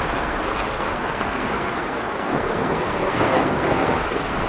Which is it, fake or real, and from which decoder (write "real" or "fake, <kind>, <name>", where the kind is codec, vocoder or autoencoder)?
fake, codec, SNAC